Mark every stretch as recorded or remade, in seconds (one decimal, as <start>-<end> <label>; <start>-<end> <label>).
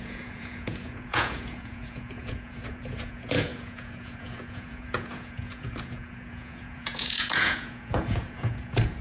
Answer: 0.0-9.0 remade